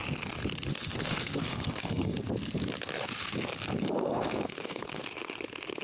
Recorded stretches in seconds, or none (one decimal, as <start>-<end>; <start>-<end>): 0.0-0.7; 2.2-3.8; 5.0-5.8